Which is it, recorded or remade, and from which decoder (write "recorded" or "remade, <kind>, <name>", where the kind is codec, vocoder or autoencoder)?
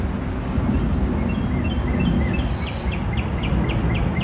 recorded